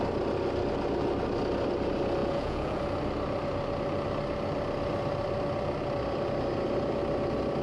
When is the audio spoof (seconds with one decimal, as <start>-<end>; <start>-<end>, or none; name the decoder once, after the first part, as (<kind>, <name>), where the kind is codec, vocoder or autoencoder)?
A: 2.2-2.8 (vocoder, Vocos)

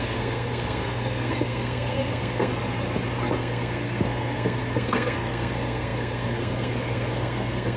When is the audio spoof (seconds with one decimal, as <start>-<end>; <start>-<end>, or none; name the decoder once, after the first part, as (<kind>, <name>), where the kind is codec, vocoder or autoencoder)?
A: 0.0-2.5 (codec, SNAC); 3.4-7.8